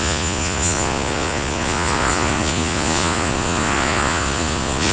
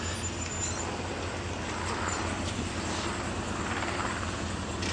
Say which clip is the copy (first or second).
first